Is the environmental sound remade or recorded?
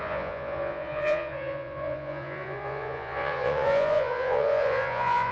remade